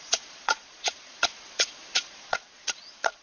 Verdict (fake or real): fake